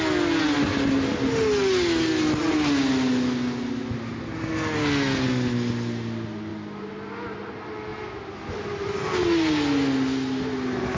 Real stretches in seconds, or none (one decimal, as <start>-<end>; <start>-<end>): 0.0-11.0